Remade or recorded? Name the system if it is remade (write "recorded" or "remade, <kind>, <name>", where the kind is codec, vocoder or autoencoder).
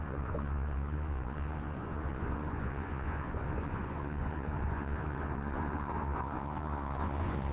remade, vocoder, Vocos